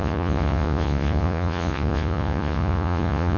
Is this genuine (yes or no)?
no